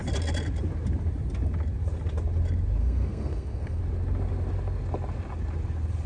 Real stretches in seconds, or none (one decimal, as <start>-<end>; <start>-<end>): 0.0-2.8; 3.8-6.1